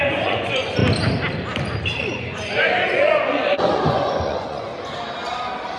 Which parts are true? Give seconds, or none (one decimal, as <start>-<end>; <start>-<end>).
0.8-2.0; 4.7-5.8